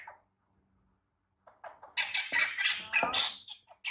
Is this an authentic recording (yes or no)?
yes